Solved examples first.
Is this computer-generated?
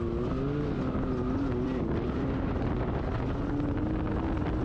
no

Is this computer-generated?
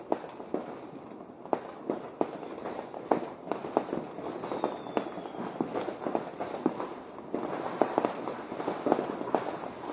no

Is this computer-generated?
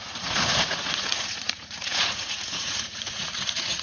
yes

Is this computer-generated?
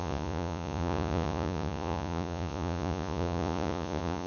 yes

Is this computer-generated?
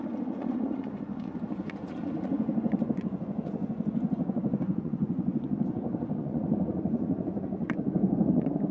yes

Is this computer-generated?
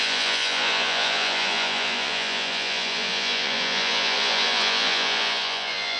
yes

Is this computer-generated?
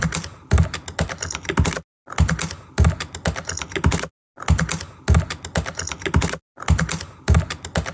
no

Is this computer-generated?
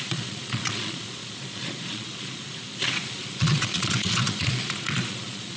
yes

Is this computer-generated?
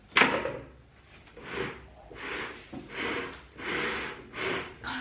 no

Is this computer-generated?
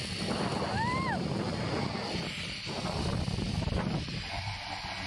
no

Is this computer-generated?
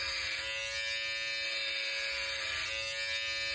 no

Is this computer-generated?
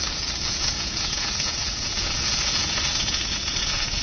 yes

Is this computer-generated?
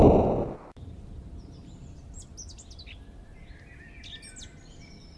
no